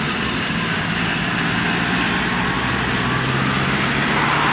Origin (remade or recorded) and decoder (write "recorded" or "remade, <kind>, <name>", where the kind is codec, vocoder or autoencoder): recorded